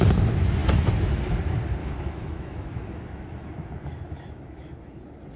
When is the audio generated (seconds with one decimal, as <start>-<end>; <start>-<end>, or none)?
1.8-5.0